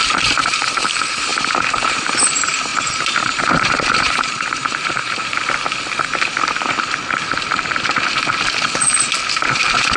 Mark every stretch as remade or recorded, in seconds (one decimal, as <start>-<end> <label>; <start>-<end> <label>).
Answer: 0.0-5.3 remade; 5.3-9.5 recorded; 9.5-10.0 remade